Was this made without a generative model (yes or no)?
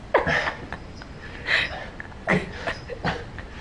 yes